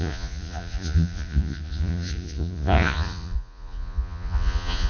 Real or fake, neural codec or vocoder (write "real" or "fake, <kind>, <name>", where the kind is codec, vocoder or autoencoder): fake, vocoder, Vocos